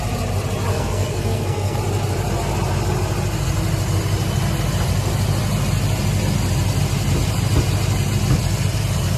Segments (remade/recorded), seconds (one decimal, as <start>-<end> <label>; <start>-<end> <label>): 0.0-0.7 recorded; 0.7-1.8 remade; 1.8-9.2 recorded